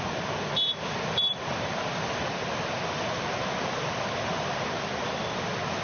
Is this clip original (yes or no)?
yes